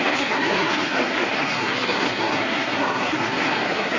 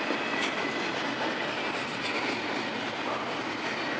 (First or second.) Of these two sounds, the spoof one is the first